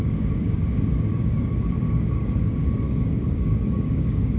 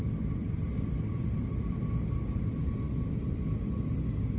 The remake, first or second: first